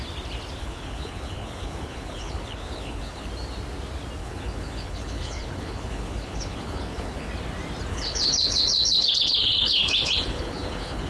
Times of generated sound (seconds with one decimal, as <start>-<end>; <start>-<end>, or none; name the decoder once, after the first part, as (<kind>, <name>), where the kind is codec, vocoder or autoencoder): 0.6-3.3 (codec, HILCodec); 4.2-7.3; 7.9-11.1